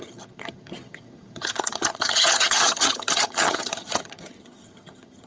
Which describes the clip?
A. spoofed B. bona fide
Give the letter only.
A